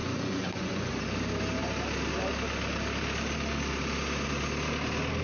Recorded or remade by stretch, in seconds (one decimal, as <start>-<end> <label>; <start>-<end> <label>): 0.0-0.9 remade; 0.9-5.2 recorded